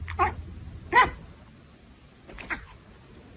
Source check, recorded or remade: recorded